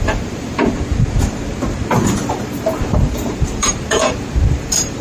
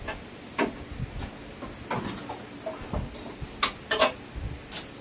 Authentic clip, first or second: second